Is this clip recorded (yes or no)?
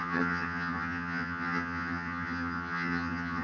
no